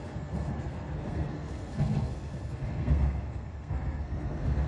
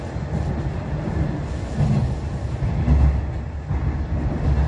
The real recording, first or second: second